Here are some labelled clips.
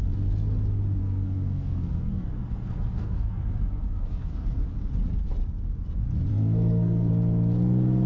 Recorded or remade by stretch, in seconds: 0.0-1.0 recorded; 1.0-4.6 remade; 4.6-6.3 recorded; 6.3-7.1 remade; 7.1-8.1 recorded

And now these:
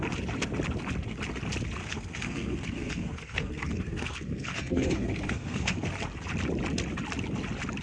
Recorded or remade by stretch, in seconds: 0.0-1.8 recorded; 1.8-5.9 remade; 5.9-7.8 recorded

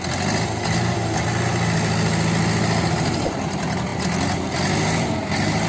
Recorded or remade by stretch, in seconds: 0.0-5.7 recorded